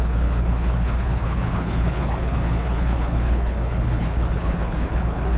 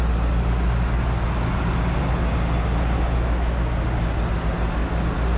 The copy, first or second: first